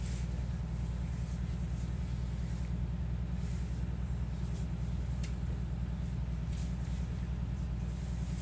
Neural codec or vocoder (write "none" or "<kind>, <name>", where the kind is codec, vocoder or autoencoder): none